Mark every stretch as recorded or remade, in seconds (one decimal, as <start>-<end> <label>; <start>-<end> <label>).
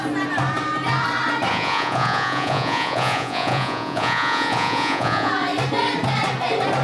0.0-1.5 recorded; 1.5-5.3 remade; 5.3-6.8 recorded